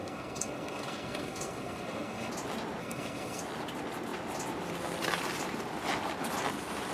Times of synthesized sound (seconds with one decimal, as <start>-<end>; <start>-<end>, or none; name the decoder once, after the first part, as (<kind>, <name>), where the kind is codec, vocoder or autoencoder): 0.0-2.3 (codec, SNAC); 2.8-3.4